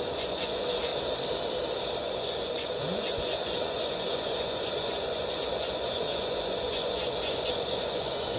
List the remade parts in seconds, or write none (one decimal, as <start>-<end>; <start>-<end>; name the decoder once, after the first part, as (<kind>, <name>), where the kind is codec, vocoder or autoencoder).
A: 0.0-0.9 (vocoder, Vocos); 2.0-8.4

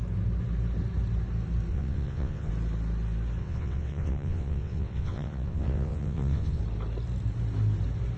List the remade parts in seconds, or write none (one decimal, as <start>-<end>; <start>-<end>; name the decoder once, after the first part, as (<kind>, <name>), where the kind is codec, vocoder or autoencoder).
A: 1.7-2.5 (vocoder, WaveNeXt); 3.4-6.6